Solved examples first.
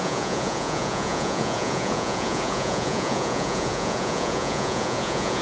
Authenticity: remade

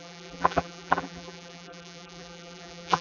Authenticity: remade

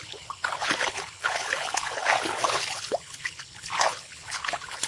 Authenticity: remade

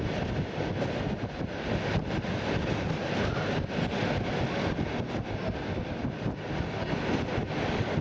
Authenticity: recorded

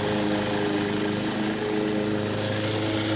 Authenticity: recorded